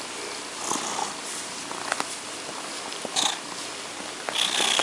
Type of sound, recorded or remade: recorded